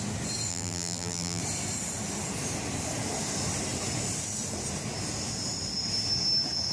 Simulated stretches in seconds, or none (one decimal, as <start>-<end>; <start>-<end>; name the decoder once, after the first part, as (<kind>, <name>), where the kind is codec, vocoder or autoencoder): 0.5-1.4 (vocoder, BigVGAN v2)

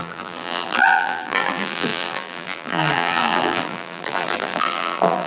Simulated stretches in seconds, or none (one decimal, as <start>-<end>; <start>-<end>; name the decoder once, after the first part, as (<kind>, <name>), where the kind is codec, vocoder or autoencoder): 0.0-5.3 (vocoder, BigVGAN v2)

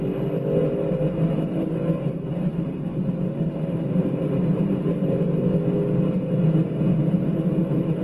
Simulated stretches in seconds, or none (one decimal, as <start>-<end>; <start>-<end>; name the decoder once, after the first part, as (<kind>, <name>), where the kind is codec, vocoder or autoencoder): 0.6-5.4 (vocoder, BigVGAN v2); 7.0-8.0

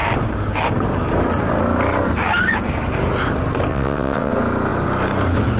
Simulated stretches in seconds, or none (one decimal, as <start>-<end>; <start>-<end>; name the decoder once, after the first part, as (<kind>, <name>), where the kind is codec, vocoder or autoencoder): 3.7-4.3 (vocoder, WaveNeXt)

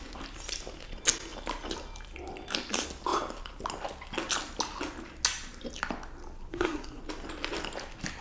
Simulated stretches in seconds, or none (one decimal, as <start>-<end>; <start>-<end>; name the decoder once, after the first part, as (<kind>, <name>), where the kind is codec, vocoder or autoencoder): 6.5-7.0 (codec, SNAC)